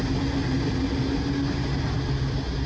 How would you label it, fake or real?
real